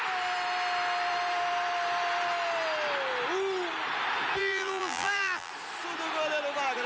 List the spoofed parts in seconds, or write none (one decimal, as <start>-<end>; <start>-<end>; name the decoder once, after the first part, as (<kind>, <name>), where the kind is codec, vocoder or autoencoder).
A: 4.4-5.5 (vocoder, BigVGAN v2)